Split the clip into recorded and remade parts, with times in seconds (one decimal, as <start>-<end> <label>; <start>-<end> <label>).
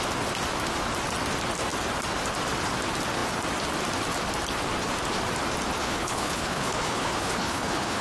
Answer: 0.0-5.8 recorded; 5.8-8.0 remade